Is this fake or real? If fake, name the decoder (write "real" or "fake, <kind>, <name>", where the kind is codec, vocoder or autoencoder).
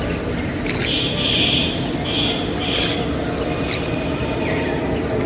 real